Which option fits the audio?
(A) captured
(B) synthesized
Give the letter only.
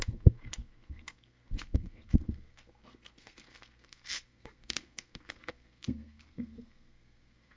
B